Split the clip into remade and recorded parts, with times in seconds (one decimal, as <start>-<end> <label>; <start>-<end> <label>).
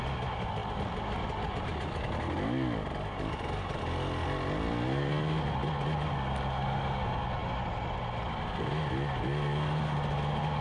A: 0.0-10.6 recorded